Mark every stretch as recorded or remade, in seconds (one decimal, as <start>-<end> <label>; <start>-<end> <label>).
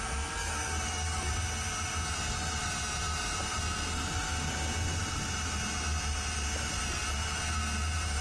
0.0-0.4 recorded; 0.4-1.3 remade; 1.3-8.2 recorded